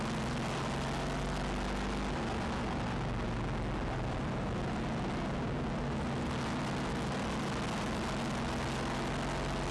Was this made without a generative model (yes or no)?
yes